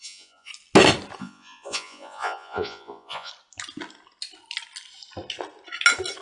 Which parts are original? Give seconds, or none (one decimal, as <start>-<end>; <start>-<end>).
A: 0.5-1.2; 3.3-6.2